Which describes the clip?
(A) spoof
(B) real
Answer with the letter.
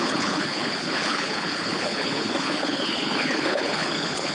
A